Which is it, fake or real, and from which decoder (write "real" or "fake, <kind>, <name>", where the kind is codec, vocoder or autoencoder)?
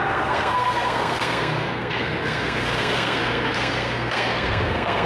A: fake, codec, SNAC